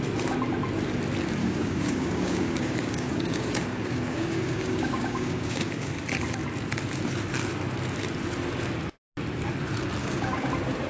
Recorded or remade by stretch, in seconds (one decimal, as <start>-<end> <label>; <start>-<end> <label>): 0.0-1.4 recorded; 1.4-5.9 remade; 5.9-10.0 recorded; 10.0-10.5 remade; 10.5-10.9 recorded

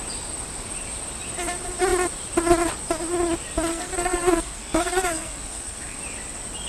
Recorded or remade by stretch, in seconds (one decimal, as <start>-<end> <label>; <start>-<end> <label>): 0.0-3.7 recorded; 3.7-6.0 remade; 6.0-6.7 recorded

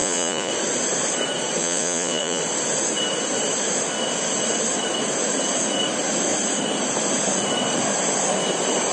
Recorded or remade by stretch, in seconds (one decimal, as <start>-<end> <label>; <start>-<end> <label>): 0.0-0.5 remade; 0.5-1.6 recorded; 1.6-2.4 remade; 2.4-8.9 recorded